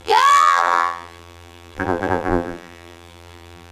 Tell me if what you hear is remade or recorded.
remade